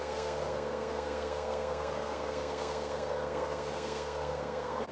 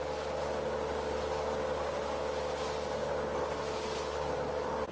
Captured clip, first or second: second